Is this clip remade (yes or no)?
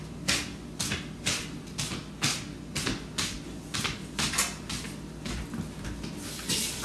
no